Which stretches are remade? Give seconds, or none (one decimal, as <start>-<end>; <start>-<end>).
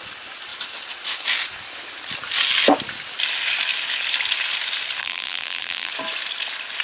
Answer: 5.0-5.9